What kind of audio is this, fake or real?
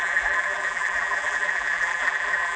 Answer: fake